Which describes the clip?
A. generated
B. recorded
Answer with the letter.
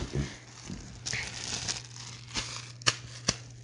B